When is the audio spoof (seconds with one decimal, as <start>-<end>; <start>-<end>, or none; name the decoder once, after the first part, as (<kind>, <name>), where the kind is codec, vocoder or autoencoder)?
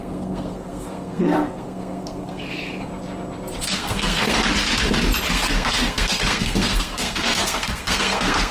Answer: 0.0-2.9 (codec, SNAC); 3.6-4.4; 5.3-8.5